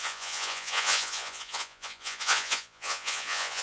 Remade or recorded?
remade